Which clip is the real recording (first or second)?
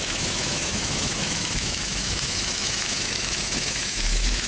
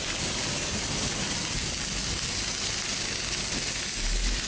second